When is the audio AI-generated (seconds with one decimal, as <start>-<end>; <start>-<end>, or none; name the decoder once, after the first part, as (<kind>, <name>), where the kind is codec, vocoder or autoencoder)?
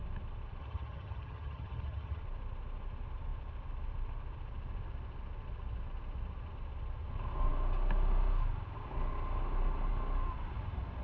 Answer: 0.6-2.2 (vocoder, HiFi-GAN)